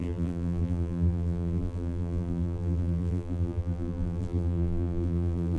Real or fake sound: fake